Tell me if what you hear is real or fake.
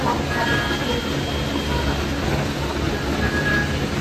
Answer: real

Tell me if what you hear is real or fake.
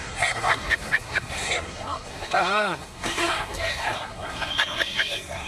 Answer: fake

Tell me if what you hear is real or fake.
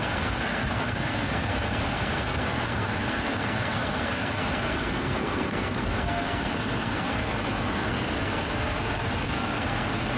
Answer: fake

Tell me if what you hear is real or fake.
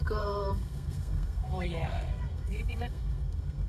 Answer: fake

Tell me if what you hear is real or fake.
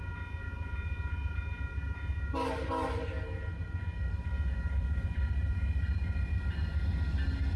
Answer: real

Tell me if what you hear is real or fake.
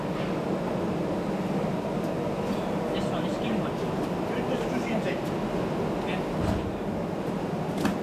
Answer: real